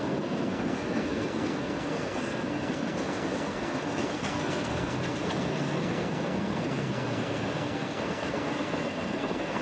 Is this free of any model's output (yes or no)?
no